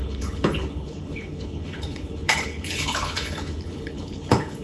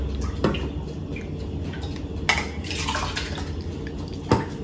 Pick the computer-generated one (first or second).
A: first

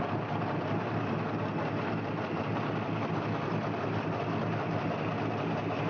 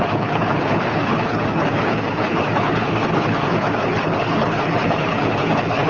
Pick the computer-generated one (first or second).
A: second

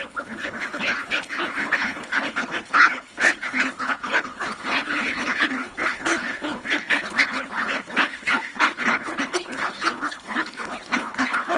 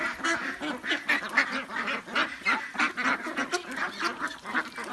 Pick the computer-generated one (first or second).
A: first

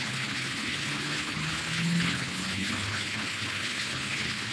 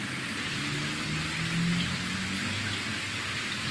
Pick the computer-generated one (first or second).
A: first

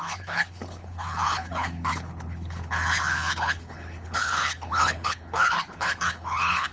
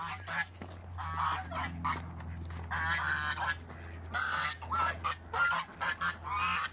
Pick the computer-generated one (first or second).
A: first